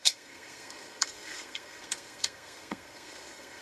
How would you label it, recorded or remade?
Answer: remade